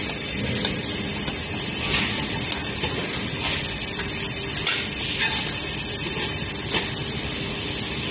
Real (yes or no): yes